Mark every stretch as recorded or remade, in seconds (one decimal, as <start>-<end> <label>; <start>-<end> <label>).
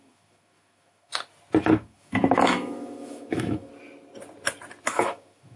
0.0-1.1 remade; 1.1-1.6 recorded; 1.6-3.7 remade; 3.7-4.9 recorded; 4.9-5.6 remade